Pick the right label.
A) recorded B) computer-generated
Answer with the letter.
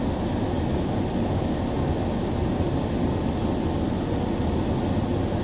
A